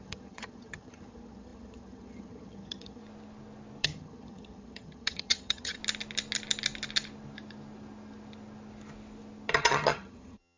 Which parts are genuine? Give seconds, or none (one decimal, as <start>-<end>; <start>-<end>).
3.0-3.8; 5.8-9.5